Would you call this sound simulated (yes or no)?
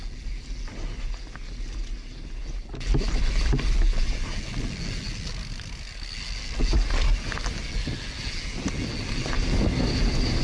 no